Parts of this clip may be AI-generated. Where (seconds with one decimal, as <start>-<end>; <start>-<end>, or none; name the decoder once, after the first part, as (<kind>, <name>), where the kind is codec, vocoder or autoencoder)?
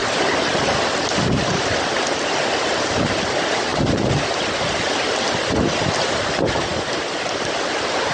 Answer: none